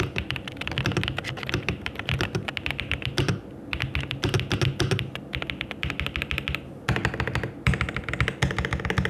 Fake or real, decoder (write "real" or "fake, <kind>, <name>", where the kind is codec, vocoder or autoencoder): real